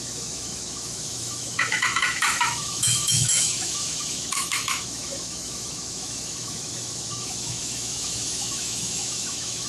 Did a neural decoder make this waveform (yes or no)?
yes